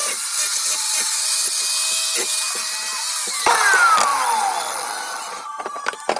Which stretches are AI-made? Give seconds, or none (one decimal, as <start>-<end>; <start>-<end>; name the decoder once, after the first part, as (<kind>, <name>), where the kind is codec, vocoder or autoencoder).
none